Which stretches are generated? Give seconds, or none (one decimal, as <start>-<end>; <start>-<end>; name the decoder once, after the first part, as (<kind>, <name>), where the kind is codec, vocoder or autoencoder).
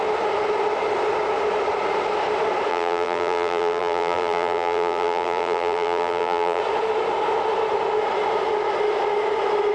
2.7-6.6 (vocoder, BigVGAN v2)